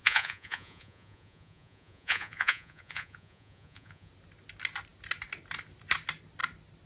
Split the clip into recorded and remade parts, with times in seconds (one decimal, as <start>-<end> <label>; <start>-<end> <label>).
0.0-4.1 remade; 4.1-6.9 recorded